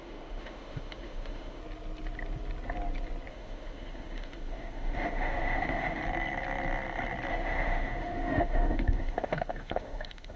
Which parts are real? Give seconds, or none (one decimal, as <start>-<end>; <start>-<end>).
1.6-3.3; 6.0-7.3